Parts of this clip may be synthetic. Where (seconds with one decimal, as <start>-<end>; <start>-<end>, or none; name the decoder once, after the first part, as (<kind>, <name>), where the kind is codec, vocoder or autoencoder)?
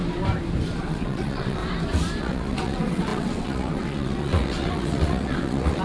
0.8-1.6 (vocoder, WaveNeXt); 2.2-5.8